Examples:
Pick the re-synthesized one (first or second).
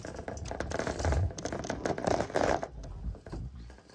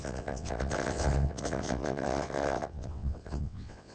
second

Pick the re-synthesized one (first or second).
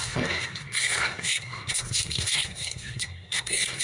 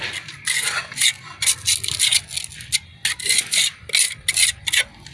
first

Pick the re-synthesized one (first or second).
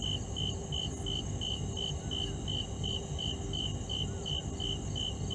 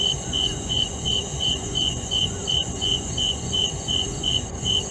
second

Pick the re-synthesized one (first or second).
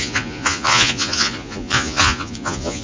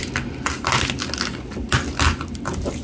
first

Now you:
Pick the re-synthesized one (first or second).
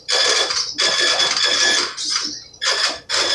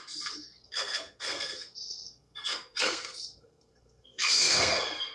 second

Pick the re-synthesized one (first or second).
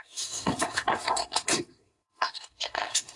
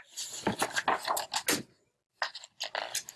first